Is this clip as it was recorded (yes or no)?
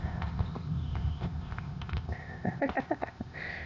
no